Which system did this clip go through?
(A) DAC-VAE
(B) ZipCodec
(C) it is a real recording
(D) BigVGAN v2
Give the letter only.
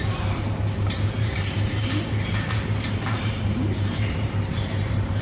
D